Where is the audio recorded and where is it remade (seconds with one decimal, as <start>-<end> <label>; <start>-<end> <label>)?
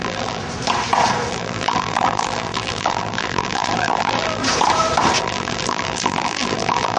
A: 0.0-0.4 remade; 0.4-1.3 recorded; 1.3-4.4 remade; 4.4-5.2 recorded; 5.2-7.0 remade